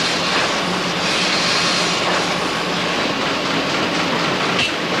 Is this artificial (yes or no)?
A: no